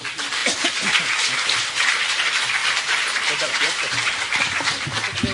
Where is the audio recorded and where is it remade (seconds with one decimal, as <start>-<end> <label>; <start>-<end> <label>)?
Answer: 0.0-2.6 recorded; 2.6-4.4 remade; 4.4-5.3 recorded